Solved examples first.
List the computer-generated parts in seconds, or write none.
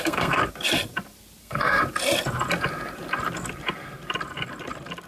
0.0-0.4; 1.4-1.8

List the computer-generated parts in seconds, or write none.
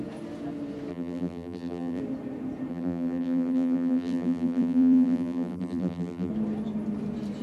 0.9-2.0; 2.7-6.3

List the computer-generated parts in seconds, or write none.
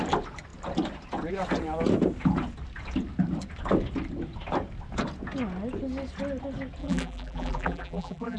6.8-8.4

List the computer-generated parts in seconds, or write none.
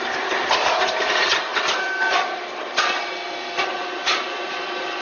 none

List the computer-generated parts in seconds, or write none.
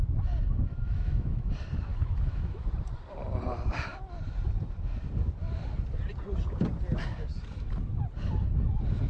0.7-1.5; 1.9-2.7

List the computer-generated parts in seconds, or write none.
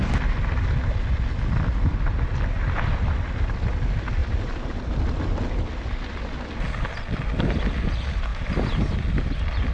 4.2-5.0; 8.3-9.0